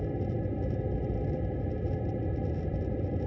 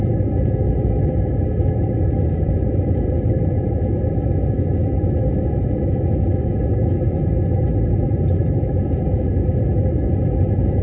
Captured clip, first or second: first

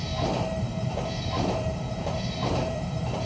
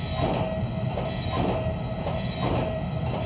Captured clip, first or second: second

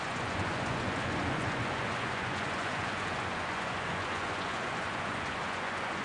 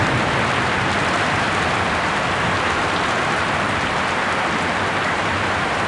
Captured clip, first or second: second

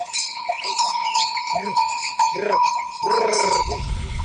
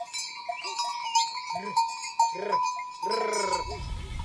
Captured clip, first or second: second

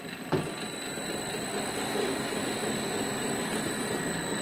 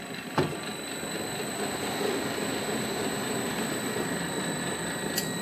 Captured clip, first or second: first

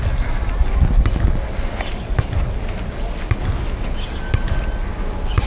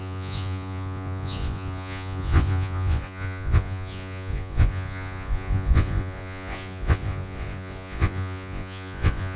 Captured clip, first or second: first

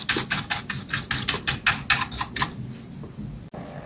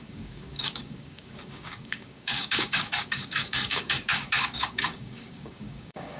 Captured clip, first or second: first